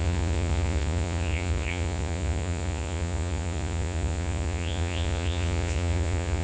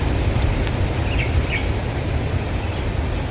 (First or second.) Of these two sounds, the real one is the second